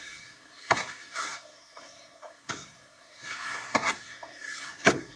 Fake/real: fake